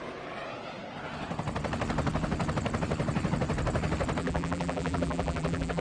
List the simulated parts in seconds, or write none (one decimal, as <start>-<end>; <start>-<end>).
4.2-5.8